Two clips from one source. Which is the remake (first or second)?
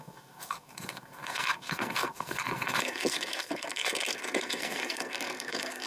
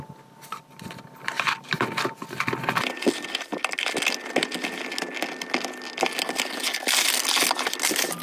first